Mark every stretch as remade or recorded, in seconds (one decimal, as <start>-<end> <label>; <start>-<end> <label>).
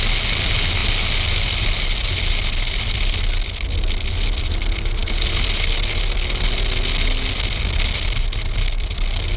0.0-9.4 recorded